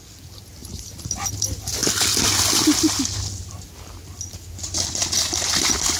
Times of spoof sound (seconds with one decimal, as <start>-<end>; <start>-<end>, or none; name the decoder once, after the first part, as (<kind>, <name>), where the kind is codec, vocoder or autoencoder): 0.6-1.3 (vocoder, BigVGAN v2)